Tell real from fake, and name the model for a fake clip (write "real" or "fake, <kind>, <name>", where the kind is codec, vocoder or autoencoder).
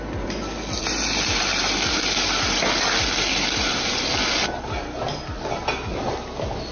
real